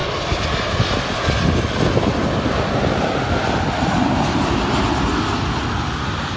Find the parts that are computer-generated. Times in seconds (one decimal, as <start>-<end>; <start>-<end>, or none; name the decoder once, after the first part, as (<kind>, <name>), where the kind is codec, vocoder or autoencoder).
none